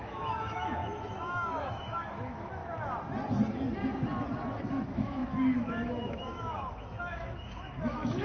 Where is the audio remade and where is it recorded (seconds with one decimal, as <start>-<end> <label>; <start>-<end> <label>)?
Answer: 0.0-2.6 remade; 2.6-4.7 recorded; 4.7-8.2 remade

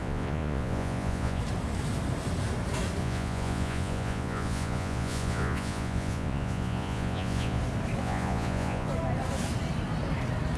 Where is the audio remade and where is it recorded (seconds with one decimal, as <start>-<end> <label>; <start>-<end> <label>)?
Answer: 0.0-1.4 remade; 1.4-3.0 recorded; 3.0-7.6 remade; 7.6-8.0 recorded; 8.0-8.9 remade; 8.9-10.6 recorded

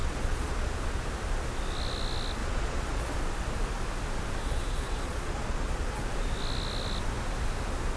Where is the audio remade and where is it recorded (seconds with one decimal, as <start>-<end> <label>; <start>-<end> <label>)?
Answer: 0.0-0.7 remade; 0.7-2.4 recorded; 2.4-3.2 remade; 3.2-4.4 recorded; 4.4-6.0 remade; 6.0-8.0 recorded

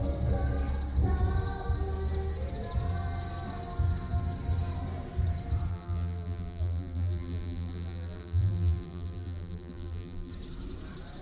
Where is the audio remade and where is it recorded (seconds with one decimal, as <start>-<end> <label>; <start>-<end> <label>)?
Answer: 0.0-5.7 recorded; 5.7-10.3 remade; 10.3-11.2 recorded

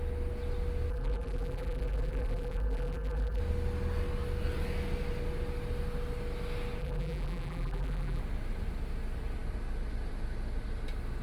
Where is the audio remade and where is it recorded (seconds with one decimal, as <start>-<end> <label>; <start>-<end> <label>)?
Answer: 0.0-0.9 recorded; 0.9-3.4 remade; 3.4-6.8 recorded; 6.8-8.2 remade; 8.2-11.2 recorded

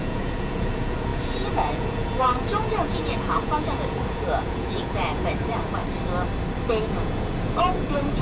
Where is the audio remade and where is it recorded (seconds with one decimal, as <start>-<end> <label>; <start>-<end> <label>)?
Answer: 0.0-5.8 remade; 5.8-6.8 recorded; 6.8-8.2 remade